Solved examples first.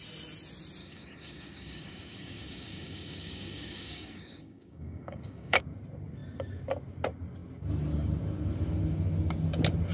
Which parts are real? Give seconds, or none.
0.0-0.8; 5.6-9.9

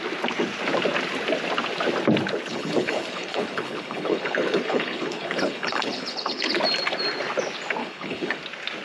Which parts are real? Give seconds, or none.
0.0-2.5; 6.6-7.8; 8.4-8.8

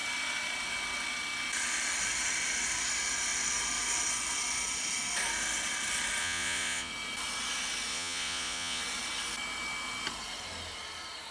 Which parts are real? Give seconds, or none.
0.0-6.2; 6.9-7.9; 8.8-11.3

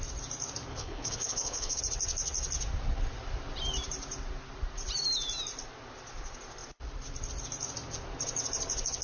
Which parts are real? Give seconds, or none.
0.0-0.7; 1.8-9.0

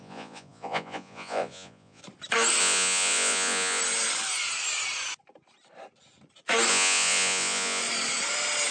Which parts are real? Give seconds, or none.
2.0-2.6; 3.8-6.7; 7.8-8.7

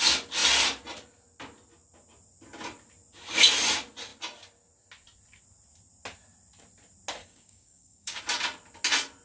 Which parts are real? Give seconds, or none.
0.0-7.2; 8.2-9.2